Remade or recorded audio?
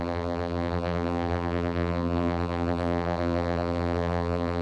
remade